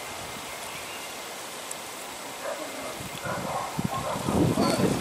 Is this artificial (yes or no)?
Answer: no